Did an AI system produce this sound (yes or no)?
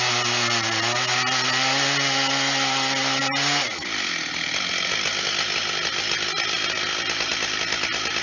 no